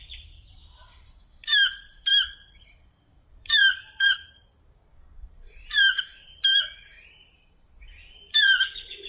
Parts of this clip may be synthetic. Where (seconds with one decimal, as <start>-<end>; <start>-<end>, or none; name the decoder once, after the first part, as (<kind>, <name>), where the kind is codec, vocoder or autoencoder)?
0.0-9.1 (vocoder, BigVGAN v2)